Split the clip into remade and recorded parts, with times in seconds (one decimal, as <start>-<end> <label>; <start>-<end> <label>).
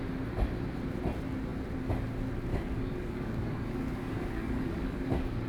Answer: 0.0-2.5 recorded; 2.5-5.5 remade